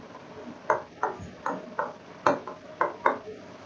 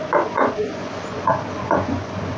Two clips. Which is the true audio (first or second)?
first